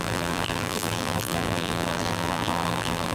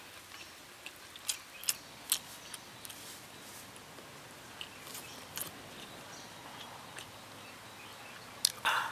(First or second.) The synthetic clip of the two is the first